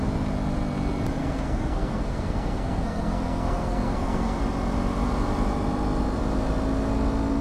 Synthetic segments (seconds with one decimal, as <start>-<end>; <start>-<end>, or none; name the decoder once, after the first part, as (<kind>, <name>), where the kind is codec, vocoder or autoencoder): 1.2-4.4 (codec, SNAC)